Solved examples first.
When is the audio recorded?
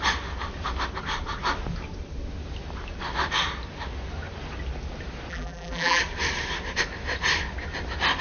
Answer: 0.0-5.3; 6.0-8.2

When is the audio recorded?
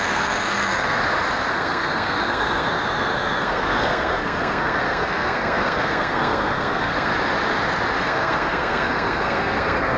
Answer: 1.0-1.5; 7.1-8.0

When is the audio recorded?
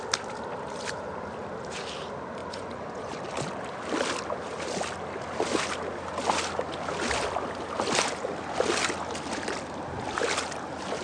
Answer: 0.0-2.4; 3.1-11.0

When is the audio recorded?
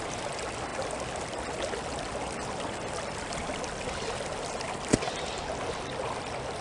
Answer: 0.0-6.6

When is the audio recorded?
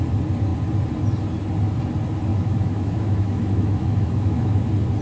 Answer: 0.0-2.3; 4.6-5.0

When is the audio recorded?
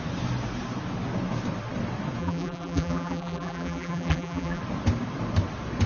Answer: 0.0-2.2; 4.6-5.9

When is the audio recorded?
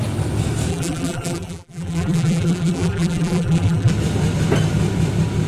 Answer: 0.0-0.7; 3.9-5.5